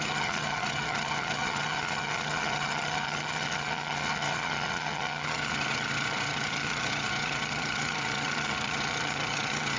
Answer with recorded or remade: remade